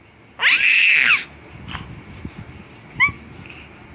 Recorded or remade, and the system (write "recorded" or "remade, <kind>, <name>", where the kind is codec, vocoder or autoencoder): recorded